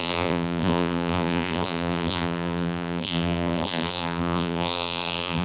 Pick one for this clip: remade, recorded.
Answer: remade